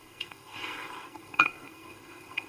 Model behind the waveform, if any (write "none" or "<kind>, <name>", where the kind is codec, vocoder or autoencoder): codec, SNAC